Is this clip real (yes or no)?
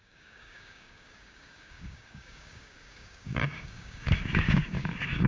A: no